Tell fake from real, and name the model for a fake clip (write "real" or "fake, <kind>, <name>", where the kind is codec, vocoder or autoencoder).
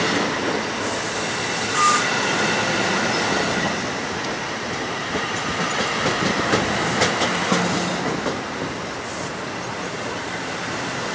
real